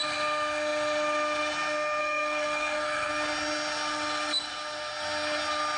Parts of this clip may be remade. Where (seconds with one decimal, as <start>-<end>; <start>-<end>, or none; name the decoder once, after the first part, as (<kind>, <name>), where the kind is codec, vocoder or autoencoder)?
2.0-3.1 (codec, SNAC)